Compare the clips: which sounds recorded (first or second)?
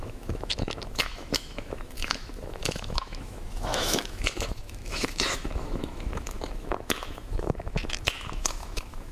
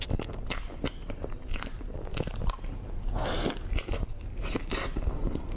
second